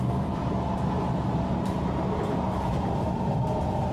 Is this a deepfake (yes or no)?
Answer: no